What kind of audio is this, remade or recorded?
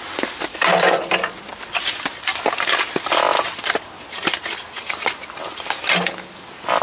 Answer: recorded